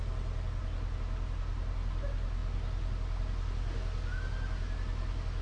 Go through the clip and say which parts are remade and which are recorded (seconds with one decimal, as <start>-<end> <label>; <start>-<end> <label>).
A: 0.0-5.4 recorded